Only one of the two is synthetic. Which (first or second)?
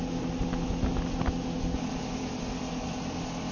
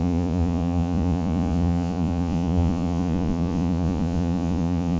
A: second